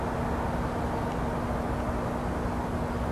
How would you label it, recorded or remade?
recorded